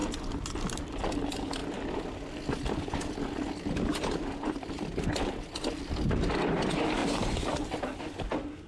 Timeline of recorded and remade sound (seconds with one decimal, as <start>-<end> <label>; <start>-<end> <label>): 0.0-7.0 recorded; 7.0-8.0 remade; 8.0-8.7 recorded